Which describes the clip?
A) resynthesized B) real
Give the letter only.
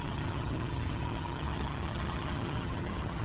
A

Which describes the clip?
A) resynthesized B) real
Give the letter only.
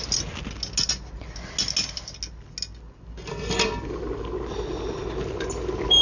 B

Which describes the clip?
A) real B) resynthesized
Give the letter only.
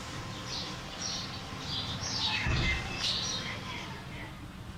A